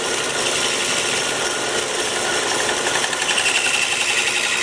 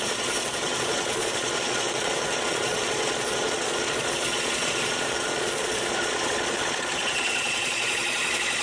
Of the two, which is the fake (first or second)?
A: second